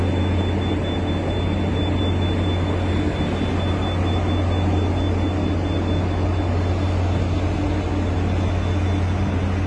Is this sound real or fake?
real